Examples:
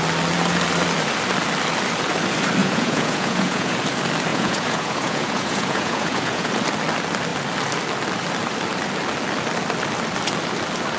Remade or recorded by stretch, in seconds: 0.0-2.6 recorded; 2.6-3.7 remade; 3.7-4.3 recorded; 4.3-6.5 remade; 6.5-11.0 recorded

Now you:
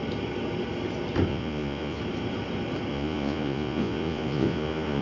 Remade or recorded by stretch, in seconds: 0.0-1.3 recorded; 1.3-2.0 remade; 2.0-2.9 recorded; 2.9-5.0 remade

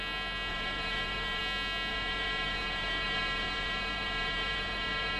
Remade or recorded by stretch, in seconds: 0.0-0.5 recorded; 0.5-1.4 remade; 1.4-1.9 recorded; 1.9-5.2 remade

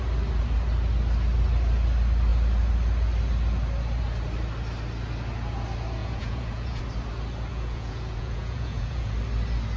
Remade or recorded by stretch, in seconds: 0.0-6.0 recorded; 6.0-6.8 remade; 6.8-7.5 recorded; 7.5-9.1 remade; 9.1-9.8 recorded